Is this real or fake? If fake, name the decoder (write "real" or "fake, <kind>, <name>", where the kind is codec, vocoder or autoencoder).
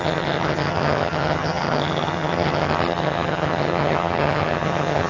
fake, vocoder, HiFi-GAN